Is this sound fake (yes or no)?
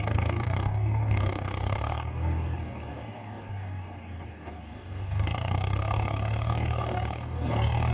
yes